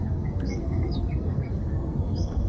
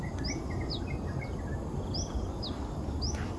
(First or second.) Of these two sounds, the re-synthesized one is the first